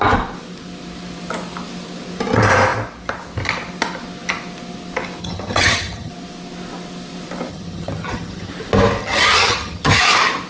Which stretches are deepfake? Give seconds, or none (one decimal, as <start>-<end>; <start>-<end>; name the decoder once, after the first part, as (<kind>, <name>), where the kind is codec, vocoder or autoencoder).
5.2-6.1 (vocoder, HiFi-GAN); 7.5-8.5; 9.0-10.0